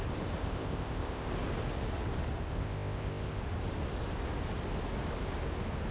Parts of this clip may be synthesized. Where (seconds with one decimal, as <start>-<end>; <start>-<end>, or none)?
0.4-1.3; 2.5-3.4